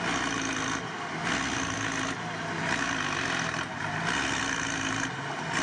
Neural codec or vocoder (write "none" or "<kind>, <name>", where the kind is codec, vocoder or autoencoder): none